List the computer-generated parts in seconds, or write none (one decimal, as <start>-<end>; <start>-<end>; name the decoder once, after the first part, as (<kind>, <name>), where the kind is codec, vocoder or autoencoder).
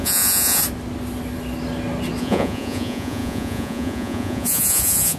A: 0.0-0.6 (vocoder, Vocos); 2.2-5.2